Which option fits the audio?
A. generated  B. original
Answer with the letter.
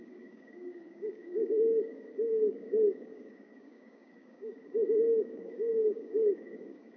A